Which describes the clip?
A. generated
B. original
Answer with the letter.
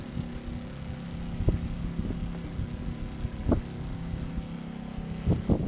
B